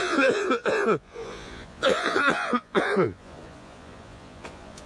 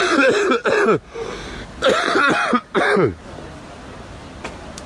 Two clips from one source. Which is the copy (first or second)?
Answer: first